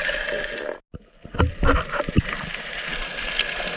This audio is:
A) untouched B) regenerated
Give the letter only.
A